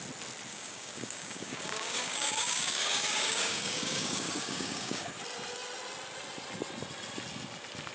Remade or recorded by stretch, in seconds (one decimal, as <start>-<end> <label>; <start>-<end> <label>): 0.0-0.5 recorded; 0.5-5.1 remade; 5.1-7.9 recorded